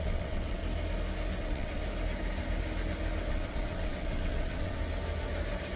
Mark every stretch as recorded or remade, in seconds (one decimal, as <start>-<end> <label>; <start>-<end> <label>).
0.0-0.6 remade; 0.6-1.4 recorded; 1.4-1.8 remade; 1.8-3.3 recorded; 3.3-4.8 remade; 4.8-5.8 recorded